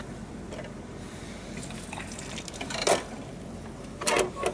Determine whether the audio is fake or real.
real